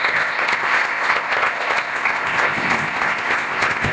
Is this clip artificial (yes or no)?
yes